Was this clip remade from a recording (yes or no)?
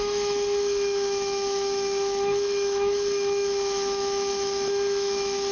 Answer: yes